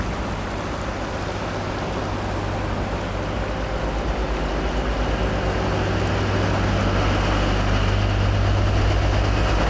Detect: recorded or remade recorded